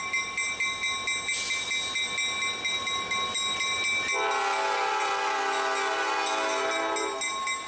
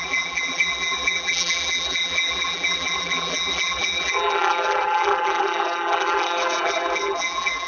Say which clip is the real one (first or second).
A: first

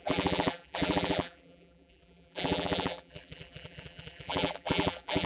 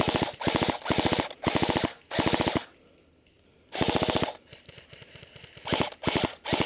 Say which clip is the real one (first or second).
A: second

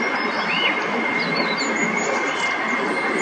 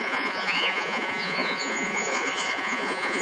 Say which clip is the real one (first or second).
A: first